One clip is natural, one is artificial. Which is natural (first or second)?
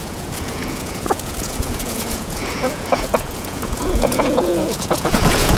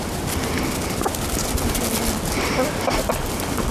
second